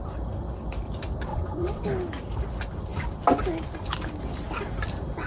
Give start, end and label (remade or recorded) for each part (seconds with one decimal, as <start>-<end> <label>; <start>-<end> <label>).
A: 0.0-1.3 recorded; 1.3-1.8 remade; 1.8-5.3 recorded